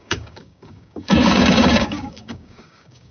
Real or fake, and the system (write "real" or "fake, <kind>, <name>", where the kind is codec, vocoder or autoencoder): fake, codec, DAC